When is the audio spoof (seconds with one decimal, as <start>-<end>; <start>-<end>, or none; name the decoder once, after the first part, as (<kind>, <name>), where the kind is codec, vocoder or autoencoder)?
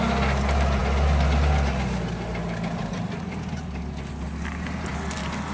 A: none